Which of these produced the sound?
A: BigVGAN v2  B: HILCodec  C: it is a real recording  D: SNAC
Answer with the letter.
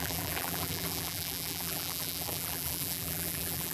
A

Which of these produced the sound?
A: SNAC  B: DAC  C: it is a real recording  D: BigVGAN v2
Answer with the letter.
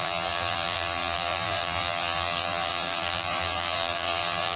D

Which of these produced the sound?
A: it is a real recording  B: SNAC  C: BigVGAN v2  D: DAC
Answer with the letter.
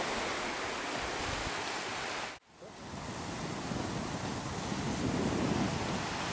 A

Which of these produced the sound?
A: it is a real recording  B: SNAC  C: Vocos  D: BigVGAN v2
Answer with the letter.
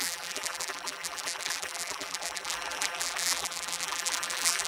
D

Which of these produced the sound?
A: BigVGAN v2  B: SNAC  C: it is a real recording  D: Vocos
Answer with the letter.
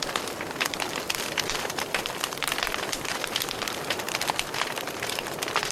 A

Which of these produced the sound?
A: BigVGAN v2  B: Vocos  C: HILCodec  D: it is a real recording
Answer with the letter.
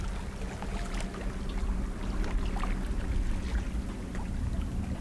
D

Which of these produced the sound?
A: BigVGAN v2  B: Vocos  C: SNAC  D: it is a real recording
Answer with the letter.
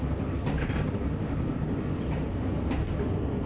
D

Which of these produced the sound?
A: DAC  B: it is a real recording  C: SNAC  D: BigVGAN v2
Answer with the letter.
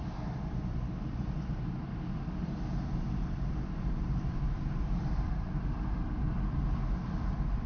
D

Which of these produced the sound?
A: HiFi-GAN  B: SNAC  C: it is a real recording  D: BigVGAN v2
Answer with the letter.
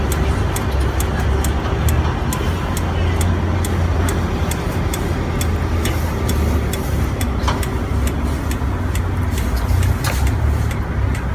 C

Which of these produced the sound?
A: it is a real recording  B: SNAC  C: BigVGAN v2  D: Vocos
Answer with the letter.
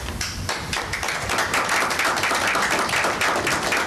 C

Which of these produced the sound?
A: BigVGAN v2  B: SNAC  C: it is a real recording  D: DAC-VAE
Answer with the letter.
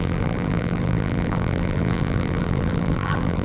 A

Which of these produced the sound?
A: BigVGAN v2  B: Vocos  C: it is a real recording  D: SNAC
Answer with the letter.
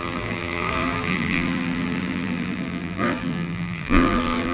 A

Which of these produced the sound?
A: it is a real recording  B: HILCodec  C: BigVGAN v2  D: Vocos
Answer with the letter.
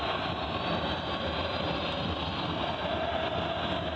A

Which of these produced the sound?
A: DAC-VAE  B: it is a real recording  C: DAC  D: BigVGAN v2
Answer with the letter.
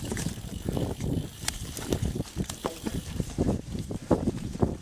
D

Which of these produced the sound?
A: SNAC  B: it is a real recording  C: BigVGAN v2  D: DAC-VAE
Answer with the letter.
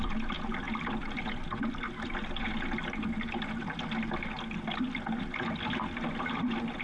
B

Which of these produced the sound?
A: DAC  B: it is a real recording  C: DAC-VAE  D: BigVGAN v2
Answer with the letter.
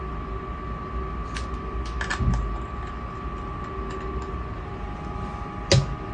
B